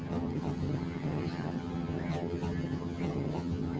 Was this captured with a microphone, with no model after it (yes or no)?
no